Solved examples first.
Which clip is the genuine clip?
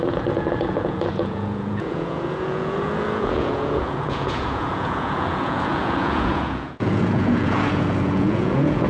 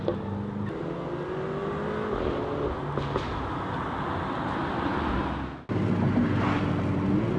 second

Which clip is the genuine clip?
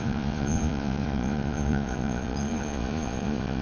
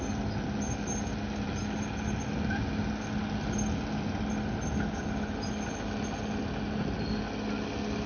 second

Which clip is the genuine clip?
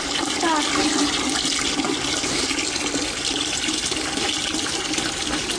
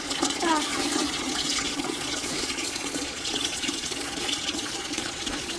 first